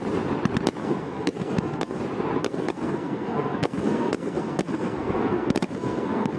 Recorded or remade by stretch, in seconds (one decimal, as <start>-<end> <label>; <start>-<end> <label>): 0.0-0.8 recorded; 0.8-2.0 remade; 2.0-2.4 recorded; 2.4-6.4 remade